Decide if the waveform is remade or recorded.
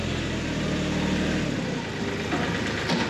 recorded